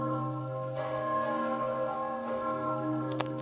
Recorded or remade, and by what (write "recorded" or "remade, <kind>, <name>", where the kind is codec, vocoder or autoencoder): remade, codec, SNAC